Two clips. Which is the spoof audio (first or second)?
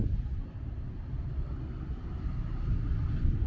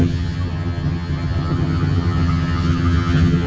second